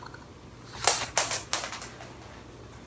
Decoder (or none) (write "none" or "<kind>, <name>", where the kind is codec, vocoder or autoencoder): none